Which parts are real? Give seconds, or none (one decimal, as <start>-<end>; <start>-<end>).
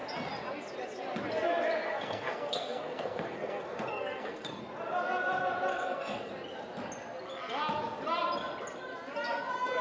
0.0-1.9; 4.6-5.7; 6.3-9.8